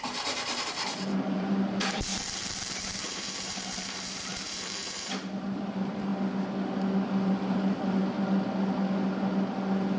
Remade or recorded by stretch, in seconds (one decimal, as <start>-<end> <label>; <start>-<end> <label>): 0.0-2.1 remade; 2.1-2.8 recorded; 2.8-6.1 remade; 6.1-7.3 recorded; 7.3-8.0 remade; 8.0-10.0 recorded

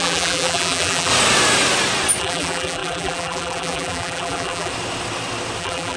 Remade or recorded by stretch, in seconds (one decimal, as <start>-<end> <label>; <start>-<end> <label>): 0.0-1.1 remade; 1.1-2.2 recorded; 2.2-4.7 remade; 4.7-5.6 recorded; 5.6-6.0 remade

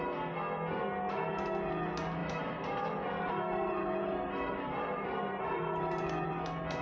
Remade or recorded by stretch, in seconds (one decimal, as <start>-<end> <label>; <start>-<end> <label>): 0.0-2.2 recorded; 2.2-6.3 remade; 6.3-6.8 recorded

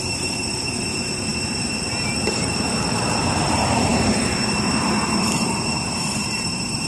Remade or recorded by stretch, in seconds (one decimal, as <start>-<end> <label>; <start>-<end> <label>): 0.0-6.9 remade

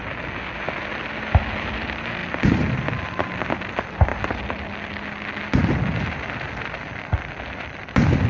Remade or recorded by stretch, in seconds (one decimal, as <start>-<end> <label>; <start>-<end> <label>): 0.0-8.3 recorded

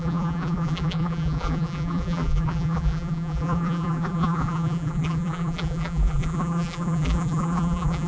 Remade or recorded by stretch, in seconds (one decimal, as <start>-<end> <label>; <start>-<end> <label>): 0.0-8.1 remade

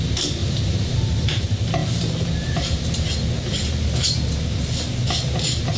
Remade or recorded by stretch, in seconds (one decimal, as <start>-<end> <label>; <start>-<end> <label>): 0.0-0.4 recorded; 0.4-1.4 remade; 1.4-1.8 recorded; 1.8-3.1 remade; 3.1-5.8 recorded